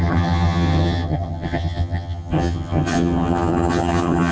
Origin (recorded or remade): remade